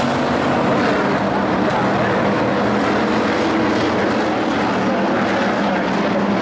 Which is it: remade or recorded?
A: recorded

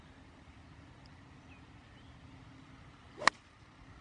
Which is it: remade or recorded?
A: recorded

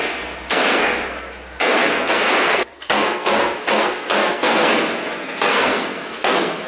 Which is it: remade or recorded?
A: remade